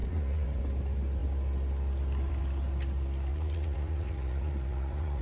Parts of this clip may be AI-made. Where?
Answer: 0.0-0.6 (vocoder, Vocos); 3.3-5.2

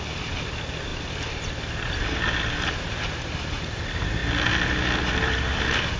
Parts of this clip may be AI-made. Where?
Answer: none

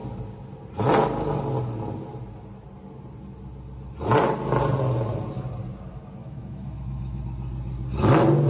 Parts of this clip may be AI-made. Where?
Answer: 6.2-7.2 (autoencoder, DAC-VAE)